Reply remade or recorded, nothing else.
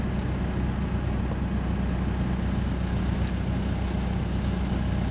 recorded